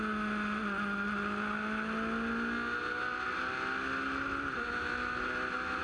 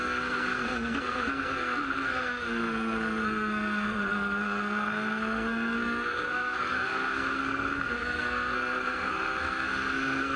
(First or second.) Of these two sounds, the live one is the first